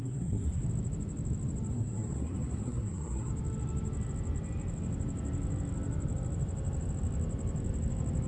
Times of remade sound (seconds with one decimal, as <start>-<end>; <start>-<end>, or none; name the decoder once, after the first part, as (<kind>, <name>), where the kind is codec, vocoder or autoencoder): 0.0-0.6 (codec, SNAC); 1.7-3.3